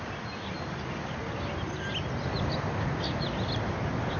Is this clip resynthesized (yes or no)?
no